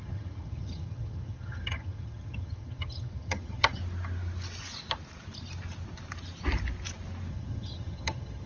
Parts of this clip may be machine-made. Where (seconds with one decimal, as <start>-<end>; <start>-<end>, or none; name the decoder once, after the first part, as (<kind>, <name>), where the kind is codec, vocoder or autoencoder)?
0.0-3.8 (vocoder, HiFi-GAN); 7.3-8.5